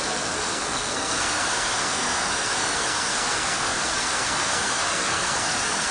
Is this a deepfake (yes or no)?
yes